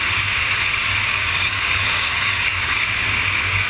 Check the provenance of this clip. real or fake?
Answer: fake